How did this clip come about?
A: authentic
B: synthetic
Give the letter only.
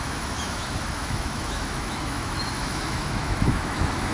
B